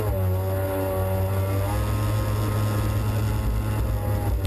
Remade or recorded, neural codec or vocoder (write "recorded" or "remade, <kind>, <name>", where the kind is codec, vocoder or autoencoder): recorded